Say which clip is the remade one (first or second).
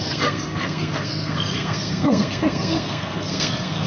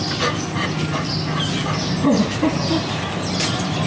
first